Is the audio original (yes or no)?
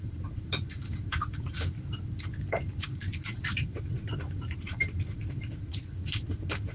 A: no